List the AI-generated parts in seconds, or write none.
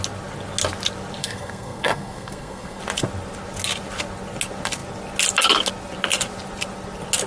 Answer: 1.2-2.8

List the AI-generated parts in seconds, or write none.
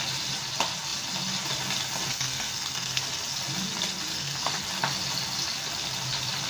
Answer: 2.1-3.0; 4.1-4.6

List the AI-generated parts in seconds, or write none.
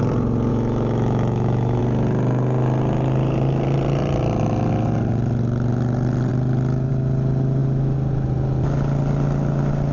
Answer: 0.5-1.8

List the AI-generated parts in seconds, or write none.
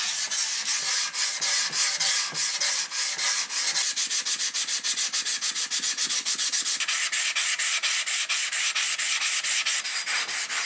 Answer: none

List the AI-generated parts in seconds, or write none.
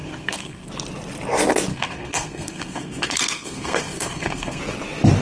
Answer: 0.0-0.7; 1.7-4.6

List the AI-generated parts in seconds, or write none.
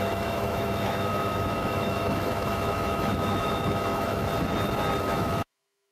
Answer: 0.0-4.3; 5.0-5.9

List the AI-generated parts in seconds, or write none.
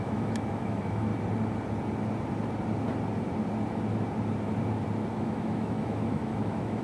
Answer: 0.0-1.1; 5.1-6.8